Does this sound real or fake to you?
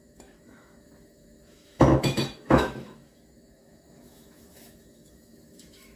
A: fake